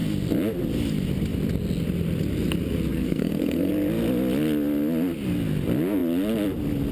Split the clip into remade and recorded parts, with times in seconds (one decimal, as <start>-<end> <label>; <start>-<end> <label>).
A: 0.0-2.9 recorded; 2.9-3.7 remade; 3.7-6.9 recorded